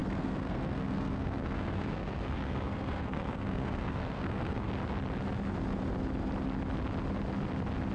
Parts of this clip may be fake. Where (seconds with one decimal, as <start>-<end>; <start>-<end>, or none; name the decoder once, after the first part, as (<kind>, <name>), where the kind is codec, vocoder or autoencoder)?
0.0-4.7 (codec, SNAC)